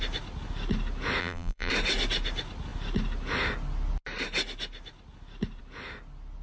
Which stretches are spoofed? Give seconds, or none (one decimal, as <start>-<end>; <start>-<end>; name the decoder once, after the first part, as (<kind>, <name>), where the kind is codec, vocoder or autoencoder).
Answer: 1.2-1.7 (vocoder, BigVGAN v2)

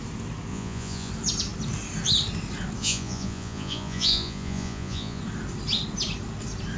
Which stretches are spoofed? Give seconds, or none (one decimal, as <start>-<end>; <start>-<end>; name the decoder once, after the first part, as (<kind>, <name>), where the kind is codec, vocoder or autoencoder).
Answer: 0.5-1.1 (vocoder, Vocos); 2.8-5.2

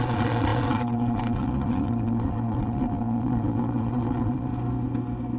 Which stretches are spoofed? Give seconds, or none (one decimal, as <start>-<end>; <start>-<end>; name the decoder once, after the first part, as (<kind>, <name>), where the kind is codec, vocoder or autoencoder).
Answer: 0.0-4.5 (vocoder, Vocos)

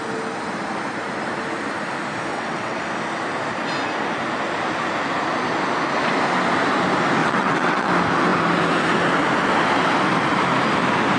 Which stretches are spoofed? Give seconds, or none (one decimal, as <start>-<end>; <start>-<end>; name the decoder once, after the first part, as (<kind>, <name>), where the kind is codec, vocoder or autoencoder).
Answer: 2.3-2.8 (vocoder, WaveNeXt); 7.2-7.9

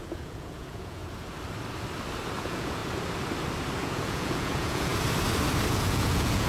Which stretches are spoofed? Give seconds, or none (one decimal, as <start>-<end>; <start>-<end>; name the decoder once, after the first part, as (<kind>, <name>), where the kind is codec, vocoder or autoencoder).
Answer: 0.0-1.0 (vocoder, Vocos); 2.4-2.8; 3.8-4.9; 5.7-6.5